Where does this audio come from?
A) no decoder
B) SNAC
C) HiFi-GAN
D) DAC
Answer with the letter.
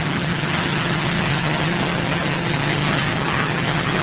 C